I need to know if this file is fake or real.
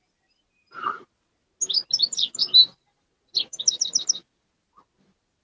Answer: real